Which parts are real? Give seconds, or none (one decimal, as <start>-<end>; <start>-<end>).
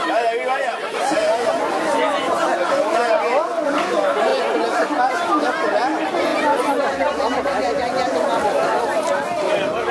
0.0-9.9